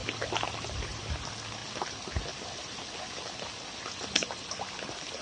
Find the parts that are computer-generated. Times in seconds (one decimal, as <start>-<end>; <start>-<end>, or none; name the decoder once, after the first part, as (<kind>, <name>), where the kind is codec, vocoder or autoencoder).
none